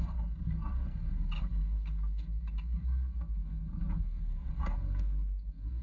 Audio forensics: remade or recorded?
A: remade